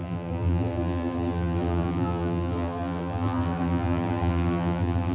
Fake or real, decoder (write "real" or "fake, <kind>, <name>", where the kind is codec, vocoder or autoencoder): fake, vocoder, BigVGAN v2